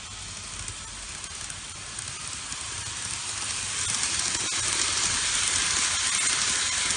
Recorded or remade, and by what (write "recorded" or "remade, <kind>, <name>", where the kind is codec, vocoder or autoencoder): recorded